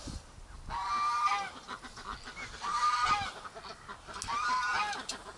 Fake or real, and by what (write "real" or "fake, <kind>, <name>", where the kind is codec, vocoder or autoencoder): real